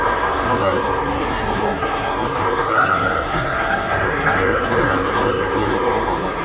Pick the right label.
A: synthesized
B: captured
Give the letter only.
A